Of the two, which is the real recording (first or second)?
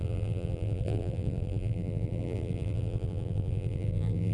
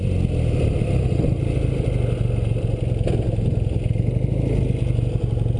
second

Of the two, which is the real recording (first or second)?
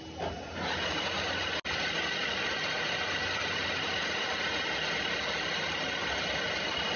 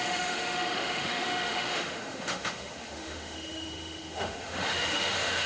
first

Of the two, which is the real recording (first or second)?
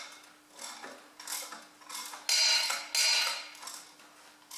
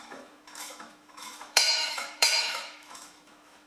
first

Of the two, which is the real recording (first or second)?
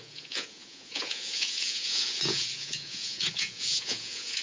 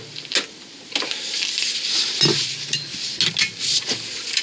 second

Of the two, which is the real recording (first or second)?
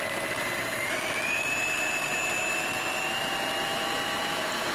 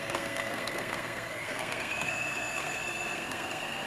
first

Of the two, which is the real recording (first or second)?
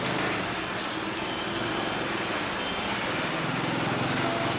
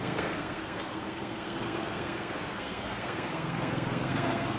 first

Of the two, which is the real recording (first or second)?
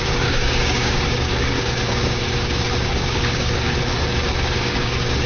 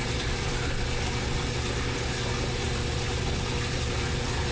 second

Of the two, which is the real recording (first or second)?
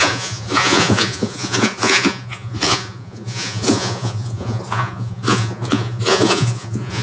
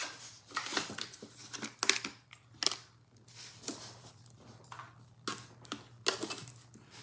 second